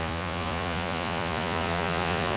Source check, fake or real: fake